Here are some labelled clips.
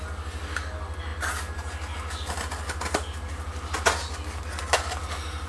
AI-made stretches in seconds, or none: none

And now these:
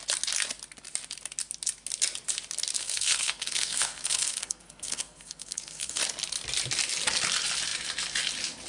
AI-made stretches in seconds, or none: 2.8-6.0 (codec, SNAC)

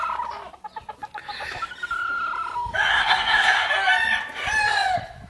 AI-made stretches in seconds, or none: 2.9-3.7 (codec, SNAC)

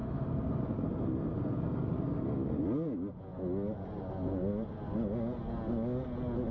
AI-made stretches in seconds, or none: none

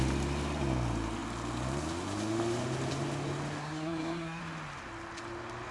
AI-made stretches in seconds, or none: 3.6-4.4 (codec, SNAC)